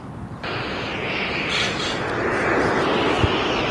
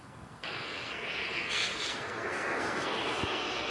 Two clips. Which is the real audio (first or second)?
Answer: first